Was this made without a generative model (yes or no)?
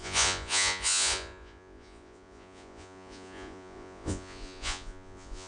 no